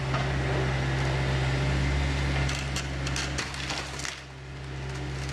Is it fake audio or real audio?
real